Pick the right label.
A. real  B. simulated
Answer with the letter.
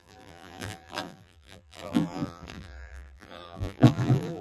B